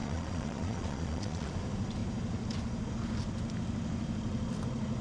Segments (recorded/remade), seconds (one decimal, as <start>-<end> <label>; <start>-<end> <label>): 0.0-1.5 remade; 1.5-5.0 recorded